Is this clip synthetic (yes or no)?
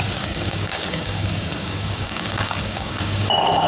yes